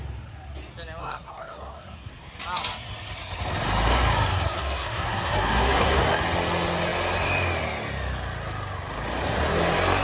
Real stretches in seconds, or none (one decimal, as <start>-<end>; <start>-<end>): 0.0-1.0; 2.3-4.3; 6.0-10.0